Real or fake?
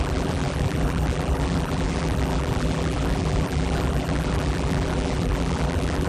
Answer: fake